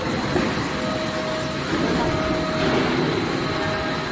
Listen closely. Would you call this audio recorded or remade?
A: recorded